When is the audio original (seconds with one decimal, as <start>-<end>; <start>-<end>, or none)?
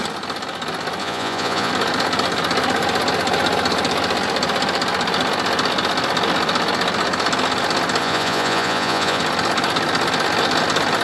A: 0.0-1.0; 1.7-8.0; 9.2-11.0